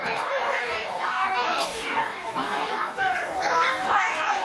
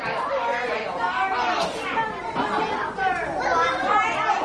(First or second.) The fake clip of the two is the first